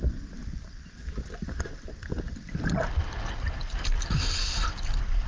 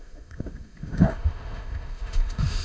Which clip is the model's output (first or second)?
second